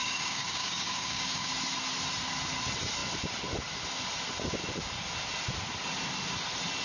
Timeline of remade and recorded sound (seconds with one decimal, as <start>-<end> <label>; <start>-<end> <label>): 0.0-1.5 remade; 1.5-6.8 recorded